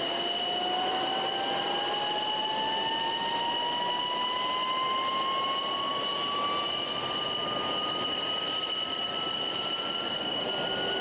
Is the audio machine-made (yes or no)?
no